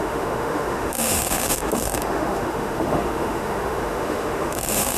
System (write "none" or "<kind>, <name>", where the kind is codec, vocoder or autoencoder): autoencoder, DAC-VAE